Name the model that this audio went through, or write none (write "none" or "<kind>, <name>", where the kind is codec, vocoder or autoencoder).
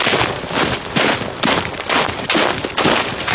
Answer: none